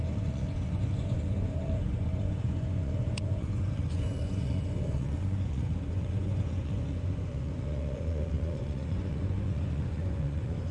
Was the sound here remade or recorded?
remade